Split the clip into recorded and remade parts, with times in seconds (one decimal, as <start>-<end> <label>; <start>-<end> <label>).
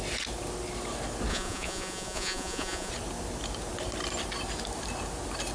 0.0-1.3 recorded; 1.3-2.9 remade; 2.9-5.5 recorded